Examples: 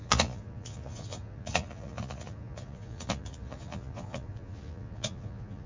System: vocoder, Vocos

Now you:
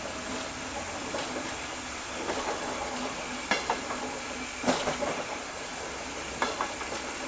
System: none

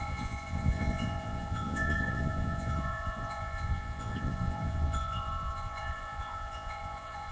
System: vocoder, Vocos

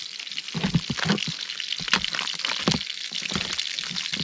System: none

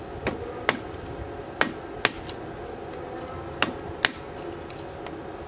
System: none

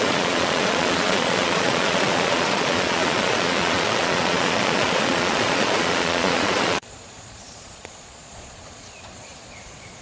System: vocoder, Vocos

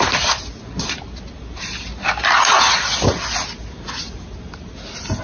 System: none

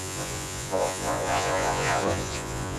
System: vocoder, Vocos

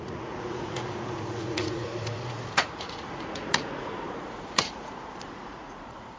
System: vocoder, Vocos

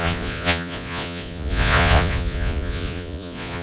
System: vocoder, Vocos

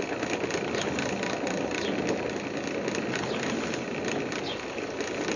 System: none